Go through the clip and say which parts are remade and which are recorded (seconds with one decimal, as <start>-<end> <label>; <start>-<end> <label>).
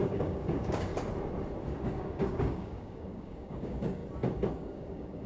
0.0-0.9 remade; 0.9-1.9 recorded; 1.9-4.0 remade; 4.0-4.5 recorded; 4.5-5.3 remade